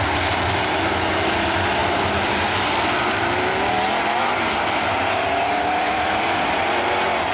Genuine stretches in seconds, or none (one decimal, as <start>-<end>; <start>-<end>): 0.0-7.3